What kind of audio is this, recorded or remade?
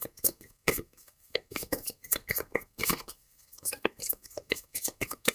remade